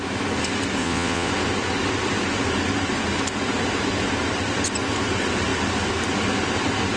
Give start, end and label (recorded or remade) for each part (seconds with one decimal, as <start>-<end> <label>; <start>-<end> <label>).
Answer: 0.0-0.8 recorded; 0.8-1.3 remade; 1.3-7.0 recorded